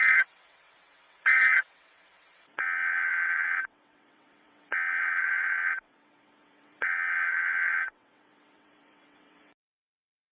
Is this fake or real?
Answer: fake